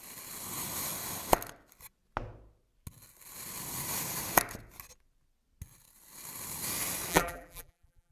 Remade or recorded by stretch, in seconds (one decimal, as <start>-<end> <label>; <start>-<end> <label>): 0.0-7.1 recorded; 7.1-8.1 remade